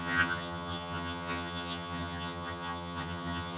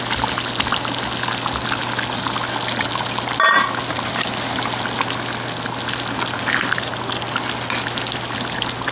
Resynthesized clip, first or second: first